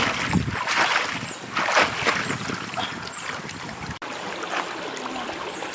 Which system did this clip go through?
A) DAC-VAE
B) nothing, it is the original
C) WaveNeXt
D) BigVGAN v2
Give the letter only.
B